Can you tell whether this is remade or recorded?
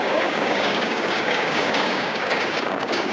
remade